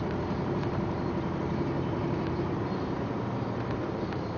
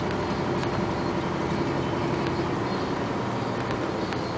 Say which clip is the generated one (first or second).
first